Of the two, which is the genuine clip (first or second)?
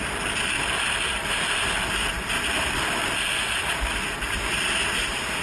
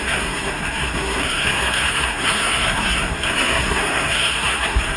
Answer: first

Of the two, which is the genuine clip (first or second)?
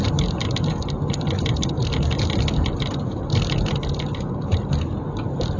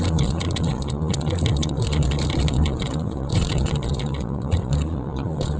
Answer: first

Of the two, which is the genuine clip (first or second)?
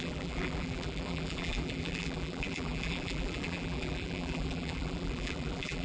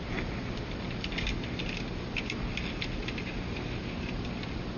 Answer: second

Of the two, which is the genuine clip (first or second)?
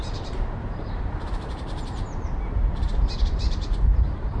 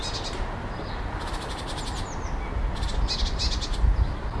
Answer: second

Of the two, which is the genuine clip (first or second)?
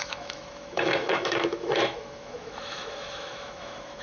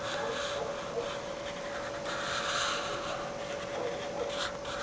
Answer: second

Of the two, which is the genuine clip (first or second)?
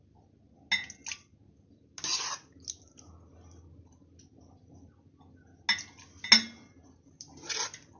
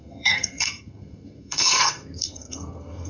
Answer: first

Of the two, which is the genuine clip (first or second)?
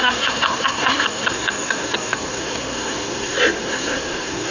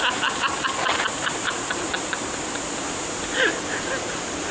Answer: second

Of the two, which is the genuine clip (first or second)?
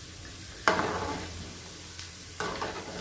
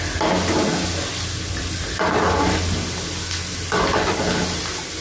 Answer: second